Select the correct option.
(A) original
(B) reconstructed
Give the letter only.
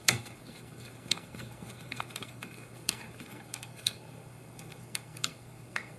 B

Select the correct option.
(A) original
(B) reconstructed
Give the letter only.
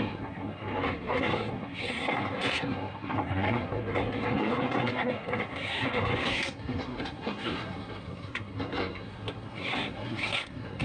B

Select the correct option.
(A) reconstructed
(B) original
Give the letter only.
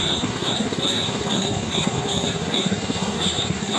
A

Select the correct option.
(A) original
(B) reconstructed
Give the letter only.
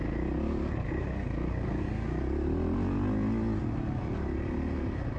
A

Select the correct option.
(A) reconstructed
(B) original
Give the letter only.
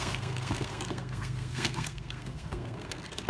A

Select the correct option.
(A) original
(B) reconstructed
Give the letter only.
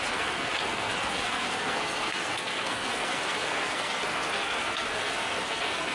B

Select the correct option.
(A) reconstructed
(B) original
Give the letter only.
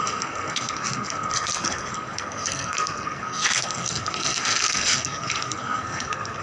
A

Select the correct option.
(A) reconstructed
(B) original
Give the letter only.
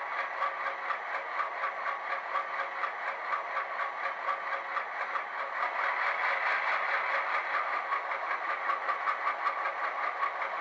B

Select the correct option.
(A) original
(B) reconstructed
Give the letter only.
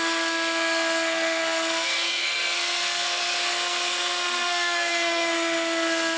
B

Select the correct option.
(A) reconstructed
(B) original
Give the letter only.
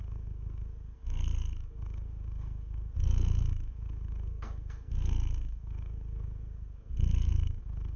A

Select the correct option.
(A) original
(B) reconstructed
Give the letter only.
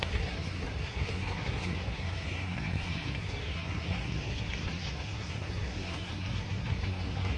B